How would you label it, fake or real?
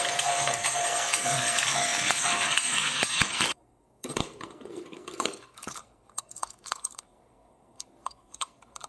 fake